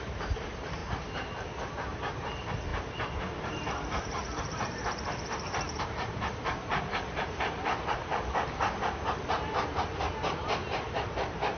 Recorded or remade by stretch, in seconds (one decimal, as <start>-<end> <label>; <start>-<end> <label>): 0.0-0.8 remade; 0.8-1.7 recorded; 1.7-11.6 remade